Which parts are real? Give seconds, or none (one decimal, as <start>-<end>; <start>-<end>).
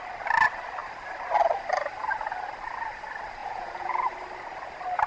0.0-3.4; 4.1-5.1